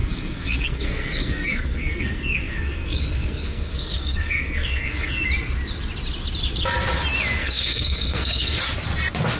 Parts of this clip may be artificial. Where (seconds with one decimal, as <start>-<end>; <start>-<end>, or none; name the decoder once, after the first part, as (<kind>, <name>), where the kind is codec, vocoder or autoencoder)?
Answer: 0.0-5.2 (codec, SNAC); 7.4-8.6